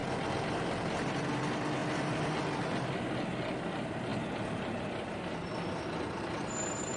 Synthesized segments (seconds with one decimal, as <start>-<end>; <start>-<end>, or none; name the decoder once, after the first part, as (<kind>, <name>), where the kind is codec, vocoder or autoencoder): 4.1-6.5 (vocoder, BigVGAN v2)